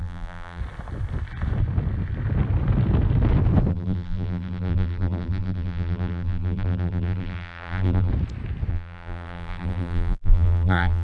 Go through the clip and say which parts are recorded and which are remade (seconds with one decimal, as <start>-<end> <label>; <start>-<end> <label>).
0.0-0.6 remade; 0.6-3.7 recorded; 3.7-8.1 remade; 8.1-8.7 recorded; 8.7-11.0 remade